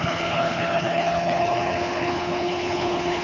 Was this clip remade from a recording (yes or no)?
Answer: yes